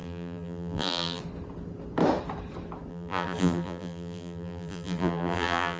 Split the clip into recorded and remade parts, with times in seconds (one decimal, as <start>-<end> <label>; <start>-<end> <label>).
0.0-1.2 remade; 1.2-2.9 recorded; 2.9-5.8 remade